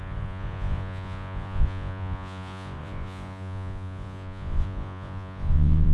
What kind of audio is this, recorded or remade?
remade